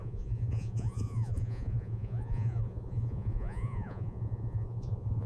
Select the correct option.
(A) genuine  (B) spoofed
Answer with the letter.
B